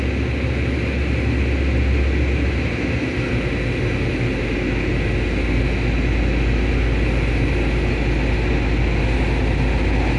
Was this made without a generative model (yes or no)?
yes